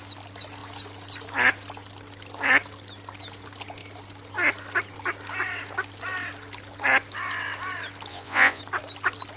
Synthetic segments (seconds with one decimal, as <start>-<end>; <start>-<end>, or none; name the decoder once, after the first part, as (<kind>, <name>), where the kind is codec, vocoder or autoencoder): 8.1-8.6 (vocoder, Vocos)